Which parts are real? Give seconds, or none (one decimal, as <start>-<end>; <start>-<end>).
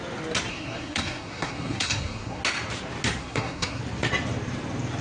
0.0-0.5; 2.4-3.2; 3.8-5.0